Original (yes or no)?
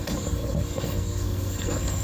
no